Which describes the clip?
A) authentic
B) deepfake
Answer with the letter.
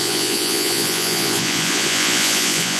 B